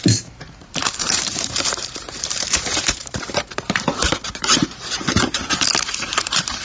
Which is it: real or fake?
fake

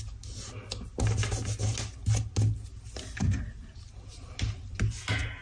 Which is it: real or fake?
real